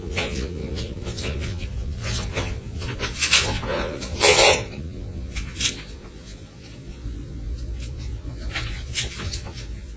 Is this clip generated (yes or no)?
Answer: yes